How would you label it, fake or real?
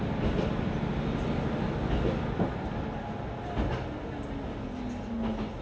real